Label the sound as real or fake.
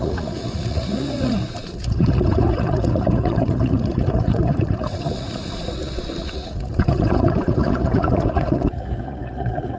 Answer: fake